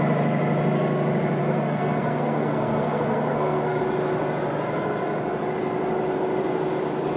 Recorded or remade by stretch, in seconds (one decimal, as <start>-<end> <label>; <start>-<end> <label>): 0.0-1.4 recorded; 1.4-3.8 remade; 3.8-7.2 recorded